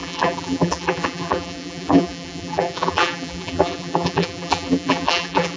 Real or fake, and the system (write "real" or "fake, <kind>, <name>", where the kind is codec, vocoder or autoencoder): fake, vocoder, BigVGAN v2